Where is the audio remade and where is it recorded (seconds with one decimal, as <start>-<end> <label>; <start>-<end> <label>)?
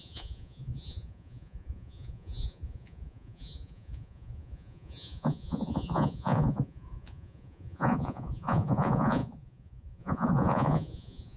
0.0-11.4 remade